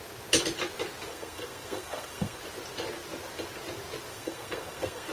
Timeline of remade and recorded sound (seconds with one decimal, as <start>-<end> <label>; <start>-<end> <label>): 0.0-1.1 recorded; 1.1-2.4 remade; 2.4-4.1 recorded; 4.1-5.1 remade